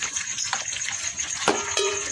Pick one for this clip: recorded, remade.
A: remade